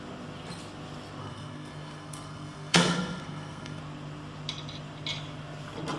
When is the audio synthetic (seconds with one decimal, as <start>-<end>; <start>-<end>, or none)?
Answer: 1.2-3.8